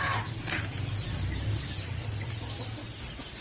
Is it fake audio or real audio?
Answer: real